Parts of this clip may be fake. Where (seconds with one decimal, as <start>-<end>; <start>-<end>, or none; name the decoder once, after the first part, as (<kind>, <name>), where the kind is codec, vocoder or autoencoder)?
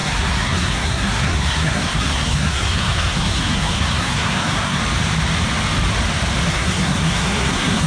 0.0-4.8 (codec, SNAC); 6.5-7.9